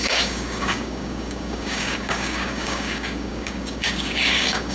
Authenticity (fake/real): fake